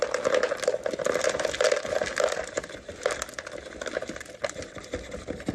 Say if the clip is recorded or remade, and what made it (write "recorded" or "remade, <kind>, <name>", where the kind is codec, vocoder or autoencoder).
recorded